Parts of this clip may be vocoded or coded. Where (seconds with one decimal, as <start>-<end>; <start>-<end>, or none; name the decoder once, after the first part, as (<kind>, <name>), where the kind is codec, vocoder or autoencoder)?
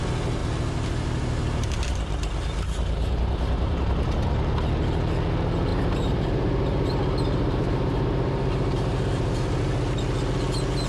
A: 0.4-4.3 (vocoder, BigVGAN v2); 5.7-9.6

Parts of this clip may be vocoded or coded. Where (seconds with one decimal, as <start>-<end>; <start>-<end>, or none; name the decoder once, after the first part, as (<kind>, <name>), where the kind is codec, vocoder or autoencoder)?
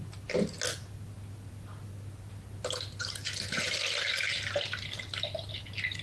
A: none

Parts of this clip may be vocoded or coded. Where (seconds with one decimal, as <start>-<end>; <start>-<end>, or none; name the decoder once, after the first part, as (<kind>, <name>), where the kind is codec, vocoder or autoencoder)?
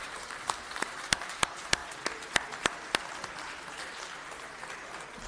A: 0.0-1.8 (vocoder, BigVGAN v2)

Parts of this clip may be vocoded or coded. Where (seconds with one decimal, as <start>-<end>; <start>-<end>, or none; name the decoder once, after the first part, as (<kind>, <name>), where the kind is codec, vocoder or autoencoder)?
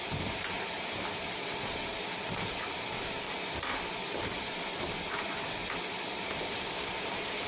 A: 0.0-1.9 (vocoder, BigVGAN v2); 6.4-7.5